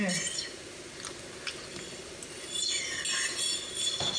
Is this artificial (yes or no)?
no